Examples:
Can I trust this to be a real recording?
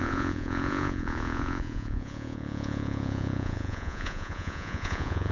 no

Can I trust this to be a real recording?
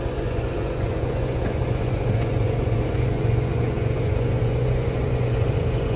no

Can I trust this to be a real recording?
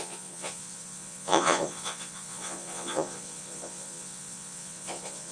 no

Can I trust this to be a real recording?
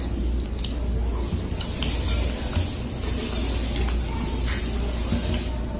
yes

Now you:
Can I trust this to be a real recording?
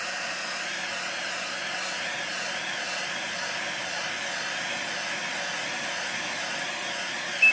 yes